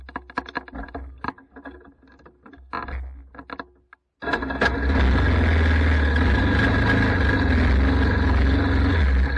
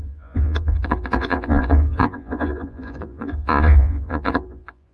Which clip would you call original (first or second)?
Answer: first